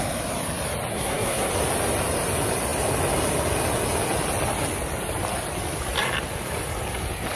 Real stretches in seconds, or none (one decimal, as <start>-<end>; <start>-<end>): 0.0-0.9; 1.5-7.4